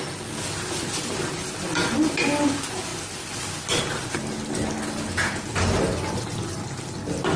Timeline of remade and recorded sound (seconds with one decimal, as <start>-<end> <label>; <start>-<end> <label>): 0.0-7.4 recorded